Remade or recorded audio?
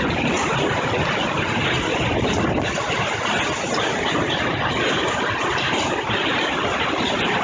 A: recorded